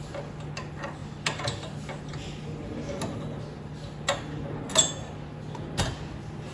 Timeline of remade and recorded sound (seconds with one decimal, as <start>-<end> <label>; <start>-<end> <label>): 0.0-6.5 recorded